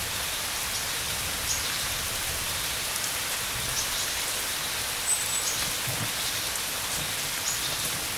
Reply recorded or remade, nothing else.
recorded